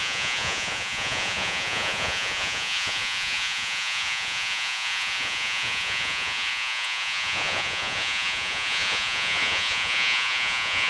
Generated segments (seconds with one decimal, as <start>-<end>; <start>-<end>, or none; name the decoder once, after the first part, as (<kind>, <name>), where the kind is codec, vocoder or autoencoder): 0.0-10.9 (vocoder, Vocos)